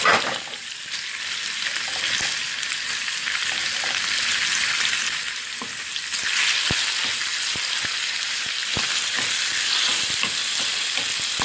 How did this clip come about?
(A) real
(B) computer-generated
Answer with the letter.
A